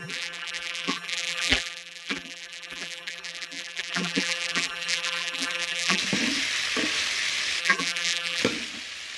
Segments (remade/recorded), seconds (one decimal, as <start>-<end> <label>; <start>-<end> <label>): 0.0-6.0 remade; 6.0-7.6 recorded; 7.6-8.4 remade; 8.4-9.2 recorded